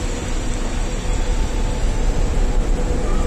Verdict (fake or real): real